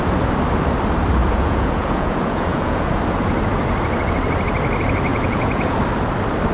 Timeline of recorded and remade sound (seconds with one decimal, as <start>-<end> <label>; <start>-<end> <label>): 0.0-1.2 recorded; 1.2-3.0 remade; 3.0-5.1 recorded; 5.1-5.8 remade; 5.8-6.5 recorded